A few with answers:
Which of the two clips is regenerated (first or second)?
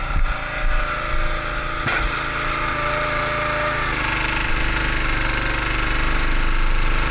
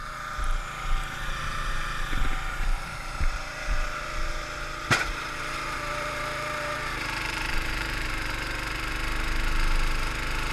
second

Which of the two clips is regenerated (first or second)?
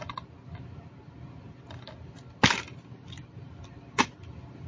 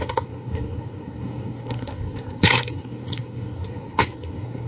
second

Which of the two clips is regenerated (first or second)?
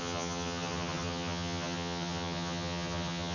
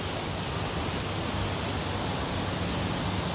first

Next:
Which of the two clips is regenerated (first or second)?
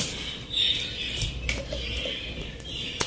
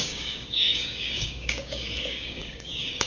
second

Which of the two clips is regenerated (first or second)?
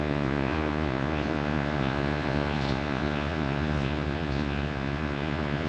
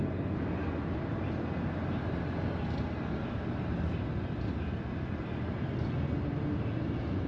first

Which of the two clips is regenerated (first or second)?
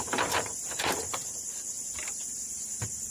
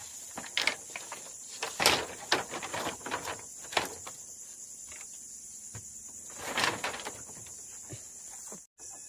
first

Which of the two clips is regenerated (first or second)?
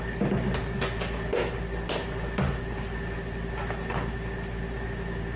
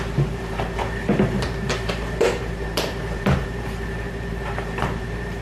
second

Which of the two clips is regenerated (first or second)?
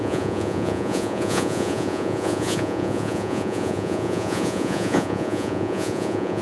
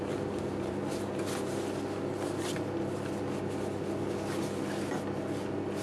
first